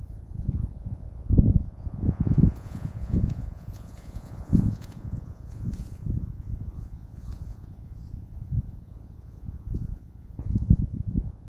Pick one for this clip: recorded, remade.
remade